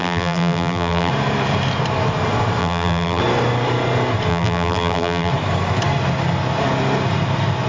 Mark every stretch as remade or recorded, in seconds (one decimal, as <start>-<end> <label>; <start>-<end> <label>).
0.0-1.1 remade; 1.1-2.6 recorded; 2.6-3.2 remade; 3.2-4.3 recorded; 4.3-5.3 remade; 5.3-7.7 recorded